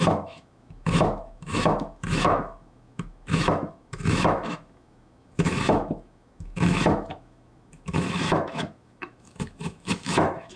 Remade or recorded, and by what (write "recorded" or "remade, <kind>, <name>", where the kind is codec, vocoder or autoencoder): remade, autoencoder, DAC-VAE